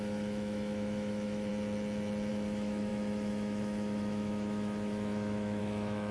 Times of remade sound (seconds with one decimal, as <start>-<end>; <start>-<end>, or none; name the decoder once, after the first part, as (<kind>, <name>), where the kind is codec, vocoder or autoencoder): 0.0-1.5 (autoencoder, DAC-VAE); 2.3-6.1